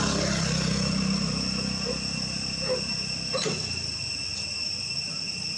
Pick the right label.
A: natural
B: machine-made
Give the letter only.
A